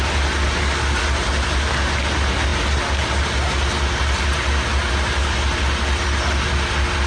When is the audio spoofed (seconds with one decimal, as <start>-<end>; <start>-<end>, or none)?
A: none